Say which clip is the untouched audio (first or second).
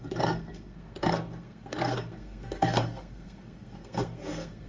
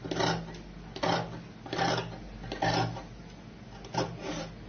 second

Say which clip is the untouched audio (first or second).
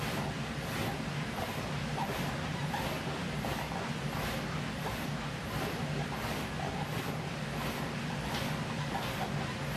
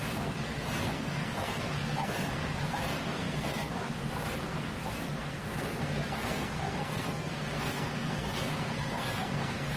first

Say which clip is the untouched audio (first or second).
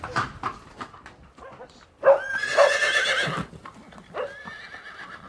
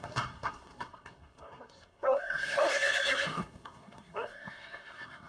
first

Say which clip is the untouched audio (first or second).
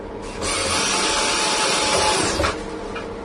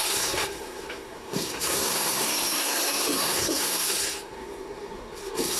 first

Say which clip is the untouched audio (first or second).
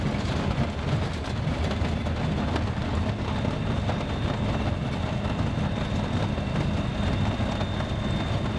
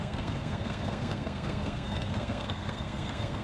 first